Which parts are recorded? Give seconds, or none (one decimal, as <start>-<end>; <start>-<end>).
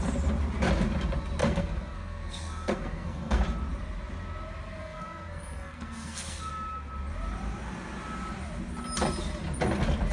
0.0-1.4; 3.4-4.8; 6.5-10.1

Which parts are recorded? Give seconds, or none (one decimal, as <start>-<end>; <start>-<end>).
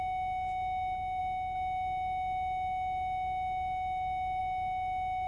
0.0-5.3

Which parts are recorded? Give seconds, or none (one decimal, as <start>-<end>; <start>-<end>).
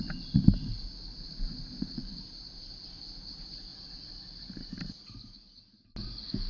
0.0-6.5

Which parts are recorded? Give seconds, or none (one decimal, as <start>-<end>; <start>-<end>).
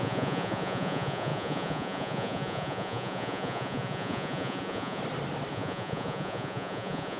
5.0-5.5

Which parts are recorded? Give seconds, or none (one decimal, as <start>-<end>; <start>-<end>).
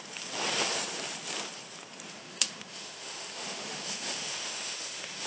0.0-2.1